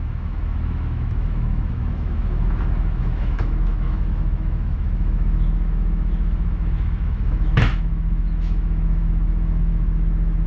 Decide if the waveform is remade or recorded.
remade